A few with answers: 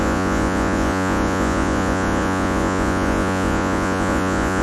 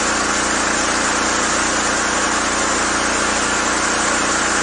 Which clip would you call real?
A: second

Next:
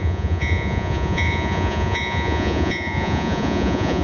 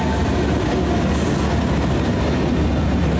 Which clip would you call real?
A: second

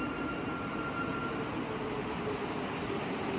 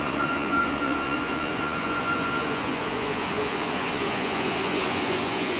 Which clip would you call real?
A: first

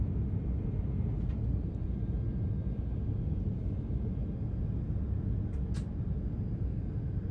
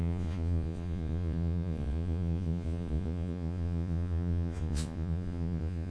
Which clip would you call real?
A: first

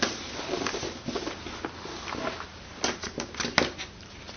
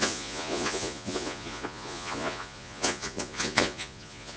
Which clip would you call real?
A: first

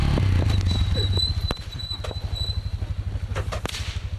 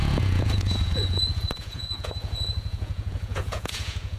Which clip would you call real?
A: first